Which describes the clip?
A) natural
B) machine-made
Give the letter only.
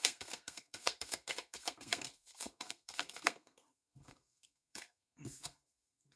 B